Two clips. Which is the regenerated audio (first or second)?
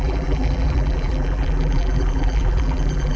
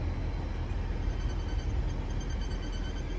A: first